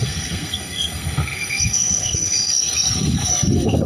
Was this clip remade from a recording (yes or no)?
yes